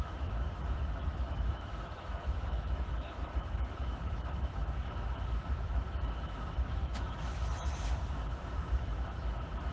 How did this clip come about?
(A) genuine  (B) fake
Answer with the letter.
B